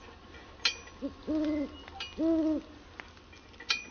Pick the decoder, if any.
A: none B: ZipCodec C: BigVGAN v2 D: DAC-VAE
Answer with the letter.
A